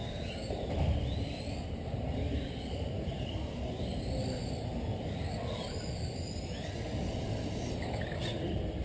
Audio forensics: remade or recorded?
recorded